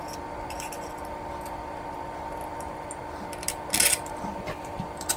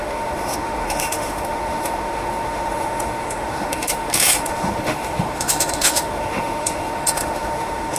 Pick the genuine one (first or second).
first